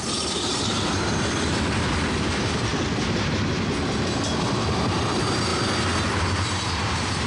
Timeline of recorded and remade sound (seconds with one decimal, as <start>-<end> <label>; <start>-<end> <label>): 0.0-2.7 remade; 2.7-4.4 recorded; 4.4-5.5 remade; 5.5-6.1 recorded; 6.1-7.3 remade